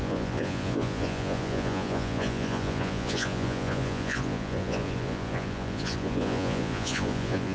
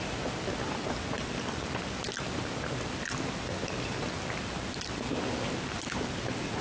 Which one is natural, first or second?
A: second